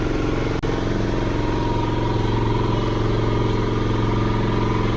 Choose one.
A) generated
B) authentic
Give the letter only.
B